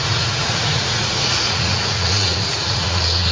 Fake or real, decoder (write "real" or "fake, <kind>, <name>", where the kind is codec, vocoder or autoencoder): fake, vocoder, Vocos